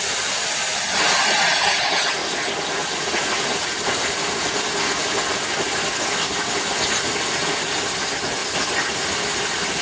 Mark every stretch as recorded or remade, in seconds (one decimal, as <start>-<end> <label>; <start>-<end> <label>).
0.0-9.8 recorded